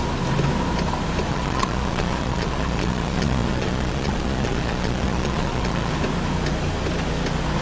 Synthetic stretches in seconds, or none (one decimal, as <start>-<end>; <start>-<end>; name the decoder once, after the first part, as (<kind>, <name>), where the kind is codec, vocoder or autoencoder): 1.3-5.9 (vocoder, Vocos)